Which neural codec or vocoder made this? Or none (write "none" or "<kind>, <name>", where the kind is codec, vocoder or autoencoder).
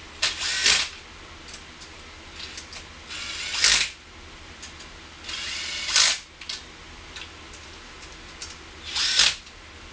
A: none